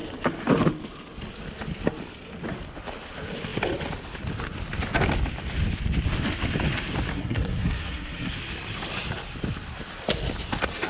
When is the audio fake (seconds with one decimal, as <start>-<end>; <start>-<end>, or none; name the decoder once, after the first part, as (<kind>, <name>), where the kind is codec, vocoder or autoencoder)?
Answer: 7.1-8.4 (codec, SNAC)